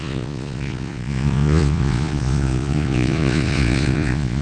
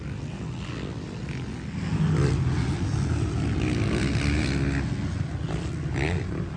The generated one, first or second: first